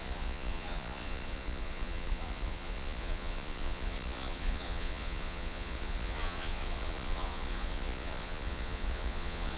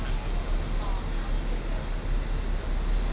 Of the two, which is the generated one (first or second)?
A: first